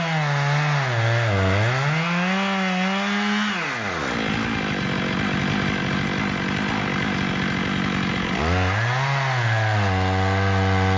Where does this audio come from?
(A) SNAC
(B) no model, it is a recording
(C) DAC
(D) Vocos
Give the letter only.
B